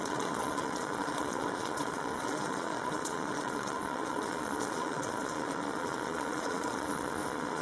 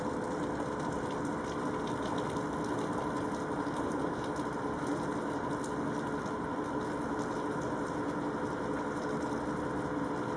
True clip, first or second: second